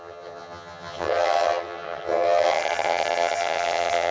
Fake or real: fake